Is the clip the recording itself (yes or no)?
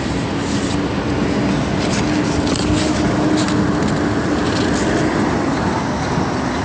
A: yes